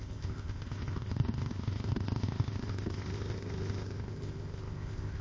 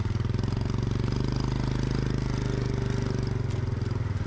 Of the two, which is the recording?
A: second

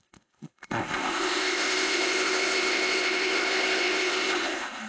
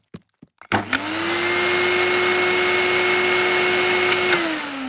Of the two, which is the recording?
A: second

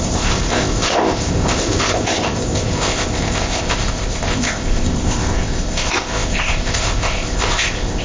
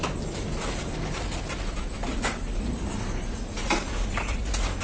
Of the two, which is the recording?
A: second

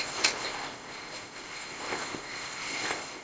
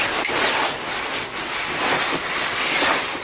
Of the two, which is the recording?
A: second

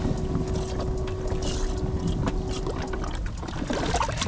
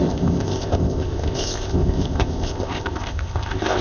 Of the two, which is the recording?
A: first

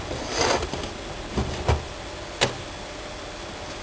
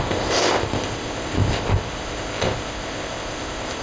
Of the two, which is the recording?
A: first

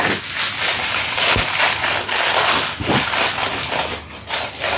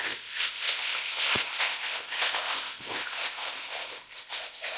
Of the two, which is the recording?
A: first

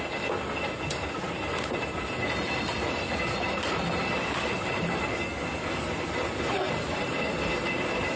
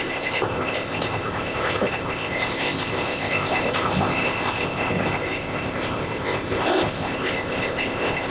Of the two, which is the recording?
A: first